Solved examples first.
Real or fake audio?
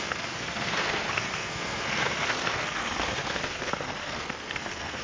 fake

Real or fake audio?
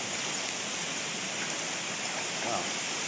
real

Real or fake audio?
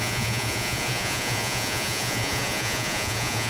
fake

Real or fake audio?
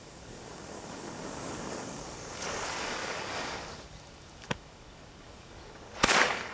fake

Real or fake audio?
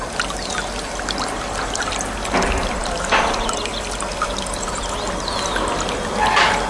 real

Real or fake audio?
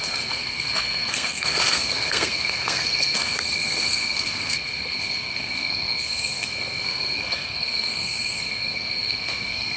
fake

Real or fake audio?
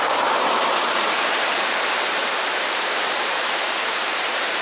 fake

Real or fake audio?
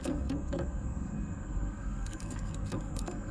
fake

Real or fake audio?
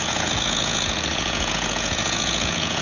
fake